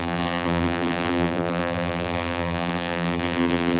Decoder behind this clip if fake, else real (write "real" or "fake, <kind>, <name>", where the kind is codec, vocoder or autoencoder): fake, vocoder, BigVGAN v2